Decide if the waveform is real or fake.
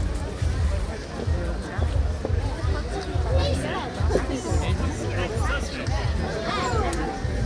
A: real